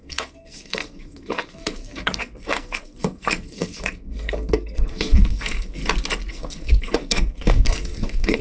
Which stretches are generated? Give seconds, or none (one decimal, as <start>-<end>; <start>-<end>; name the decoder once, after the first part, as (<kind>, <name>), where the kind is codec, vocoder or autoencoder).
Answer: 0.0-5.8 (codec, SNAC); 6.3-8.4